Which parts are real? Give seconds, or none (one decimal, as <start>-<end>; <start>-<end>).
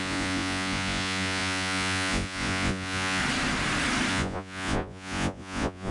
3.2-4.1